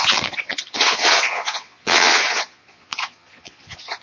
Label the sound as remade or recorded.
remade